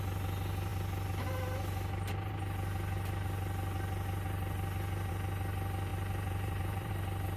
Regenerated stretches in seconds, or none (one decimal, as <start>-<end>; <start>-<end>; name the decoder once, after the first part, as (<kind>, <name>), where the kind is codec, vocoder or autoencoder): 5.9-6.9 (vocoder, BigVGAN v2)